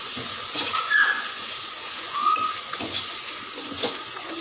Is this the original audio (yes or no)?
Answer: no